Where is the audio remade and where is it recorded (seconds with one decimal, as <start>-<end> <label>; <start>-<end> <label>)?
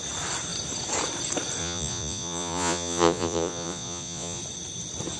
0.0-1.6 recorded; 1.6-4.4 remade; 4.4-5.2 recorded